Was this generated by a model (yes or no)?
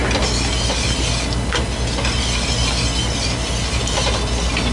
no